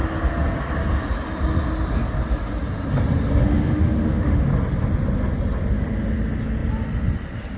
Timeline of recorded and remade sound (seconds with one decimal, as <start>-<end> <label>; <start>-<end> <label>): 0.0-3.4 recorded; 3.4-4.5 remade; 4.5-7.6 recorded